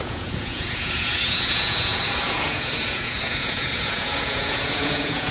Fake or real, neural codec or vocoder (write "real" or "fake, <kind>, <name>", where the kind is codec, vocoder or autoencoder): fake, vocoder, Vocos